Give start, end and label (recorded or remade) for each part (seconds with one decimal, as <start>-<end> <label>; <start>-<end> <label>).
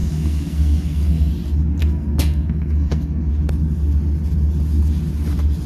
0.0-1.3 remade; 1.3-1.8 recorded; 1.8-3.3 remade; 3.3-5.7 recorded